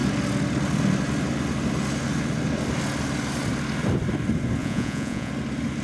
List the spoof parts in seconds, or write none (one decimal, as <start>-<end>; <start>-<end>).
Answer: 4.6-5.3